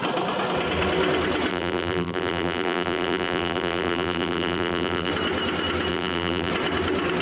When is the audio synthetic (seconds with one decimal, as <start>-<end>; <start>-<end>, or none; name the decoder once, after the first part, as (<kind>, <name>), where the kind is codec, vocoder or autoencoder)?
1.5-5.1 (vocoder, BigVGAN v2); 5.9-6.5